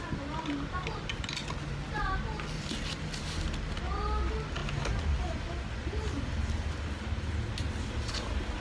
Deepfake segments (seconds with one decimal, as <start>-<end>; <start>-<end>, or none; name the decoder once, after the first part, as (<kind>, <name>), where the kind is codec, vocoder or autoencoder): none